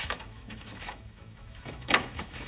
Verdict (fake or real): fake